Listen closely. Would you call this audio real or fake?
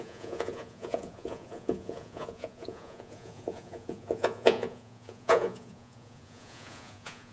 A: fake